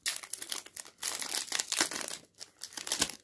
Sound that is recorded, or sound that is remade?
recorded